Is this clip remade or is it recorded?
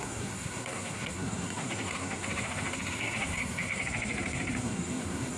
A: remade